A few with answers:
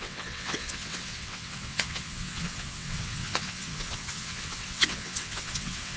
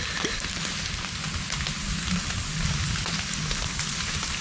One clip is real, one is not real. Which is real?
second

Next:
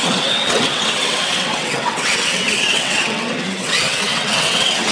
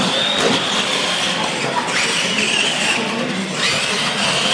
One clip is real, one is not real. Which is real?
second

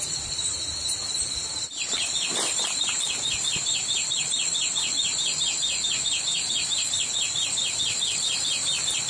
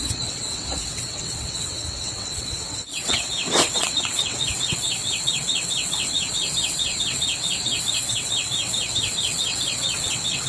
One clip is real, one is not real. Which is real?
first